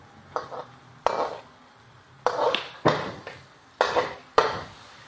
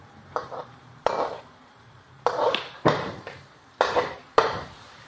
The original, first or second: first